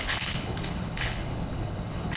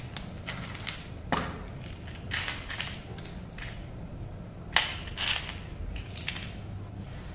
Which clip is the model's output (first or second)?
first